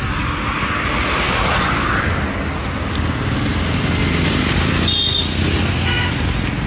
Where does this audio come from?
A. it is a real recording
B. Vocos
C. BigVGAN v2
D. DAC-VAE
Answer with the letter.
A